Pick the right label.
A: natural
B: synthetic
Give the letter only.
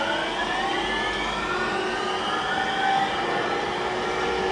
A